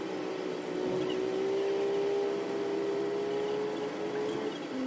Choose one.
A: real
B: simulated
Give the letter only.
A